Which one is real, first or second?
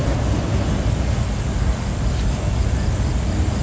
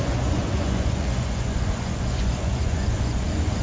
first